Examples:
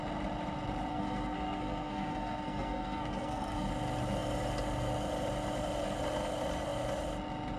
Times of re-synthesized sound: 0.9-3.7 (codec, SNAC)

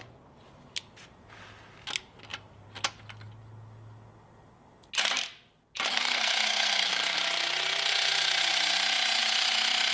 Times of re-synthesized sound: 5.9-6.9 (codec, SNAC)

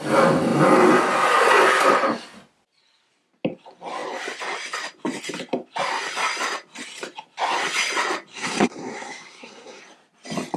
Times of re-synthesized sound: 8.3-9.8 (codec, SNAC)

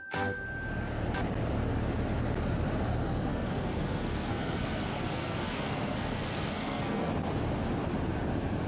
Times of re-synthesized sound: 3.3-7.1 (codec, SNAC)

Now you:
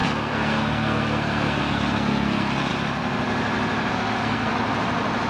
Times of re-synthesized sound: 0.0-2.7 (codec, SNAC); 3.9-4.5